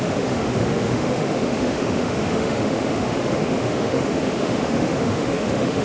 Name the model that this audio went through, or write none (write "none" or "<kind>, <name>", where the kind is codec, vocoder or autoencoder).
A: autoencoder, DAC-VAE